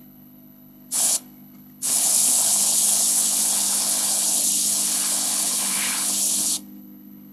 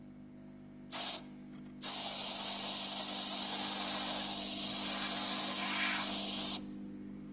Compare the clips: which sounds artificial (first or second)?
first